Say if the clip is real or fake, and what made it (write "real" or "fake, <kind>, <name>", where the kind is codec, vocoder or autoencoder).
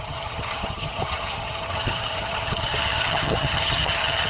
fake, vocoder, HiFi-GAN